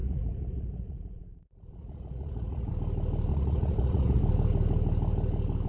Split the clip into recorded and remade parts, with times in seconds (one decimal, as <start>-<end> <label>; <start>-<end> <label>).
0.0-2.7 remade; 2.7-3.3 recorded; 3.3-4.2 remade; 4.2-5.7 recorded